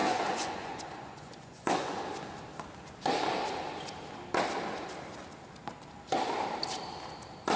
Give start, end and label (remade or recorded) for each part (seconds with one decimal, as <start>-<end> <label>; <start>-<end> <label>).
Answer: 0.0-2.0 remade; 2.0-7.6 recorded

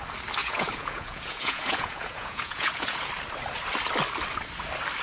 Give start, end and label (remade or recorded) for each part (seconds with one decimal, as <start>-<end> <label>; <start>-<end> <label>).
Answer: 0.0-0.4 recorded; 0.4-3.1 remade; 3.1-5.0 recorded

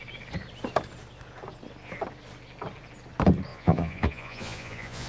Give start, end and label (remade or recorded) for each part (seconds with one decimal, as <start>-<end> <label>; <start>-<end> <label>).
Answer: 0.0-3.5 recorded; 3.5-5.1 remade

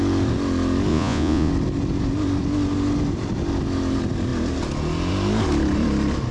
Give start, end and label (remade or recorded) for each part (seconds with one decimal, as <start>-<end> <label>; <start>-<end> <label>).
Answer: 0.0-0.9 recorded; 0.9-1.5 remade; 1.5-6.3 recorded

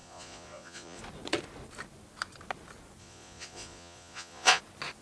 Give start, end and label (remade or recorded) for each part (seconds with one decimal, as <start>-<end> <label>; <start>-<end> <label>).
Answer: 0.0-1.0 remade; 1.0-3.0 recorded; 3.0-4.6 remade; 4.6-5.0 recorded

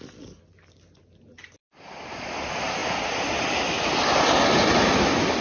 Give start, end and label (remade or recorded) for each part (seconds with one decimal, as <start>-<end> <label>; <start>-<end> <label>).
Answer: 0.0-5.4 recorded